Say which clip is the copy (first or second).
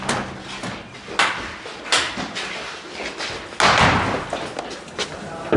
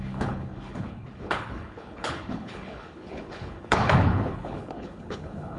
second